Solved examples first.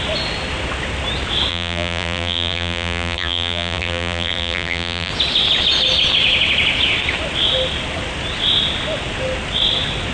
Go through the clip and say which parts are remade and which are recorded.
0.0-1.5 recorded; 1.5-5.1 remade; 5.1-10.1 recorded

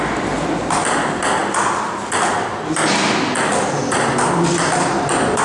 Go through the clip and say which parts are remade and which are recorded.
0.0-5.4 recorded

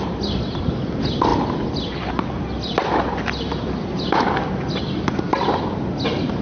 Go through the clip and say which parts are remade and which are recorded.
0.0-6.4 recorded

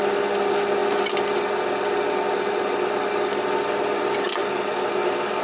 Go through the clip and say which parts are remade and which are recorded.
0.0-5.4 recorded

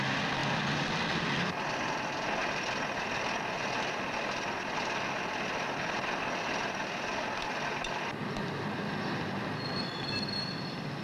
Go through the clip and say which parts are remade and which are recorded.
0.0-11.0 recorded

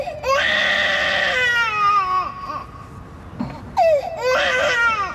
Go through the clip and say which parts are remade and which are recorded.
0.0-5.1 recorded